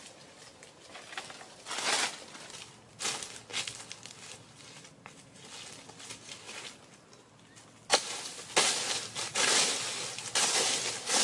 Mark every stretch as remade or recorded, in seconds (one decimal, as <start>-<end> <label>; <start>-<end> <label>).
0.0-7.9 recorded; 7.9-8.5 remade; 8.5-11.2 recorded